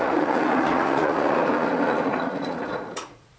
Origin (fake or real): fake